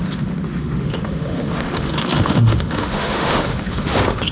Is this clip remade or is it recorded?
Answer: remade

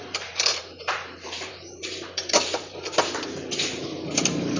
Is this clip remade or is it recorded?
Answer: remade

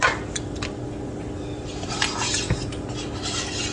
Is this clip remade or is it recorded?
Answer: recorded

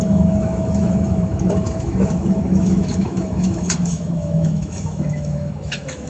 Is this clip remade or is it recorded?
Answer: remade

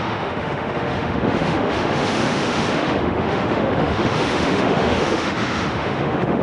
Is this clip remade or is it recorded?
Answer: remade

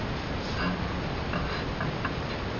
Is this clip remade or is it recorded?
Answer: recorded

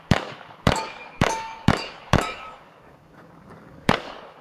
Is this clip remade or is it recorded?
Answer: remade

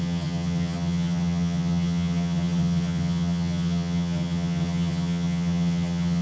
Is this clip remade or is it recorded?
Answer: remade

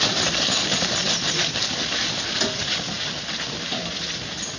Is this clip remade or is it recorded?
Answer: recorded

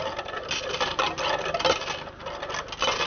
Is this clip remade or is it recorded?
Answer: recorded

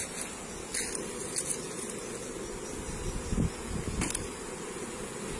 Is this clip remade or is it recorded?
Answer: recorded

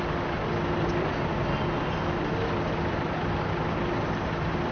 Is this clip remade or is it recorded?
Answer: recorded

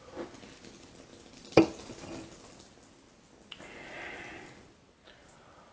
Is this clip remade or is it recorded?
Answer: recorded